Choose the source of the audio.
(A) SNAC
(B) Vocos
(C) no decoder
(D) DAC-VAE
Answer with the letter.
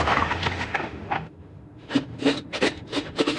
D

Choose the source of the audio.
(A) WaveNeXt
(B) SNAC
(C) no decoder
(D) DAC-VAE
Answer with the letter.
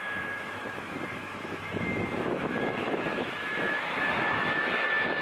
D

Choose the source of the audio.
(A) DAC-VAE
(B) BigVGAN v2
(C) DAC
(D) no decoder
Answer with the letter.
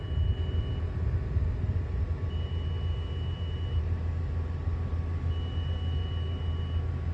D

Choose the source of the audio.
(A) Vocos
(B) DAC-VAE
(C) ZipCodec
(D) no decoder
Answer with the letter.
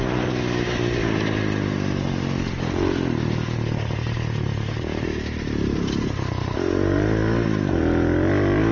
D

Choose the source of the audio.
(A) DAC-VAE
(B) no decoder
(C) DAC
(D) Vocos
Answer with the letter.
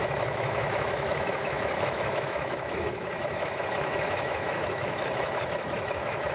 A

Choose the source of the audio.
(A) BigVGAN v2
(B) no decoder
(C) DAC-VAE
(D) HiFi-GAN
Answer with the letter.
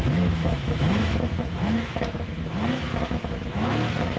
C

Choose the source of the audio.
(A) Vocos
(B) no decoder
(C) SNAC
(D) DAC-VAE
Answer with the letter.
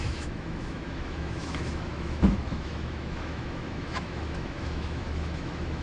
D